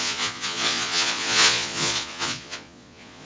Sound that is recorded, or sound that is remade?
remade